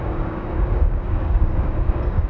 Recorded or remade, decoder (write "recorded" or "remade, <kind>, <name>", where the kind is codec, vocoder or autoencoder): remade, codec, DAC